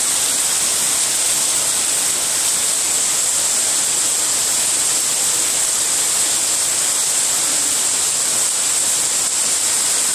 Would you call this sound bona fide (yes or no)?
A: yes